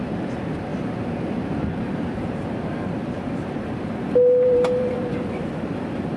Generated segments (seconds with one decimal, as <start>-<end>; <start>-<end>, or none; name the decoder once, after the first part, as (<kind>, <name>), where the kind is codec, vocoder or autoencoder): 0.0-6.2 (vocoder, BigVGAN v2)